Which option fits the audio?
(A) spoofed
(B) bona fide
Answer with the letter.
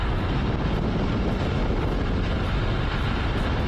B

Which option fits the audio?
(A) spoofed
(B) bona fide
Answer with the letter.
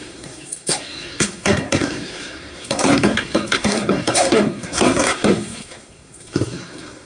A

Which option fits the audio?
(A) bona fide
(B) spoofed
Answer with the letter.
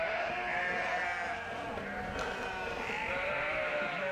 A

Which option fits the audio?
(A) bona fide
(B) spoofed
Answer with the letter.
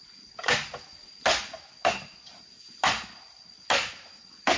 A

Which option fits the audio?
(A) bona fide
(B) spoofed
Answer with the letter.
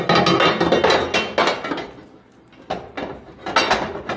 A